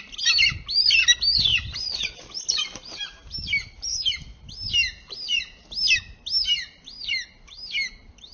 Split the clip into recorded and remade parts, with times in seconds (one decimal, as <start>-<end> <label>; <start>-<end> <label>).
0.0-8.3 recorded